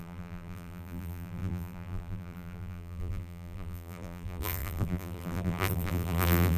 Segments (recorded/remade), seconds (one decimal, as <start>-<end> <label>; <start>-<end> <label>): 0.0-6.6 remade